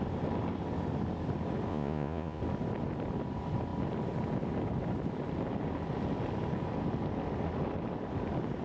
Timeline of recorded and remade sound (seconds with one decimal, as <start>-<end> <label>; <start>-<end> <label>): 0.0-1.7 recorded; 1.7-2.4 remade; 2.4-8.6 recorded